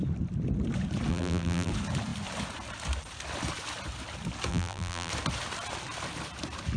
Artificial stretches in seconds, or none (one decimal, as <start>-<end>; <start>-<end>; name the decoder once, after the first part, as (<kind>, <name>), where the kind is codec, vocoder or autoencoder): 1.1-1.7 (vocoder, BigVGAN v2); 4.5-5.1